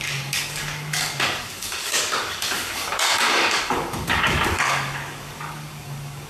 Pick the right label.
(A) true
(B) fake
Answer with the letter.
B